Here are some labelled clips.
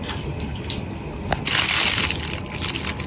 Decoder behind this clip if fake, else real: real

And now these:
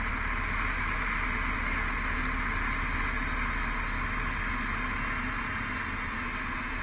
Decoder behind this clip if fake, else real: real